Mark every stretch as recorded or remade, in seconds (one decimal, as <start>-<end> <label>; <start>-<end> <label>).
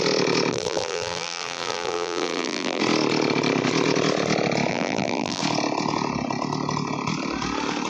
0.0-0.5 recorded; 0.5-2.8 remade; 2.8-4.7 recorded; 4.7-5.4 remade; 5.4-7.9 recorded